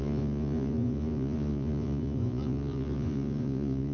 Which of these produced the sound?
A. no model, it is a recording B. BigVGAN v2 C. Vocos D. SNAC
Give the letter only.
C